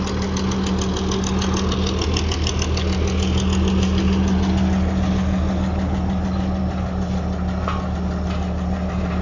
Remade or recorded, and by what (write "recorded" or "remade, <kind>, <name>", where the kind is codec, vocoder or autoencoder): recorded